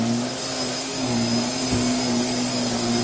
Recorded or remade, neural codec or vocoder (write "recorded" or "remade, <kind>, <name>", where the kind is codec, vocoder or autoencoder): recorded